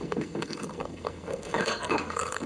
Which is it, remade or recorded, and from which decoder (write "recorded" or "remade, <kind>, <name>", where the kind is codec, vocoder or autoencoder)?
remade, codec, SNAC